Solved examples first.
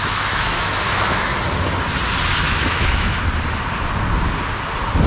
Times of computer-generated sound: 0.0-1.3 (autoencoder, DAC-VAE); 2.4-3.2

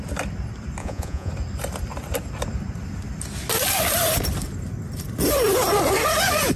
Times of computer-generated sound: 0.8-1.3 (vocoder, Vocos)